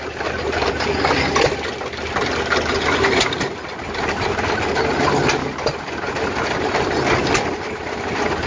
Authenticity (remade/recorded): recorded